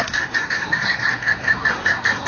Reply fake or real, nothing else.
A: fake